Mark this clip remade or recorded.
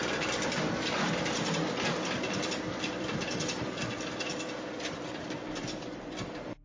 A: remade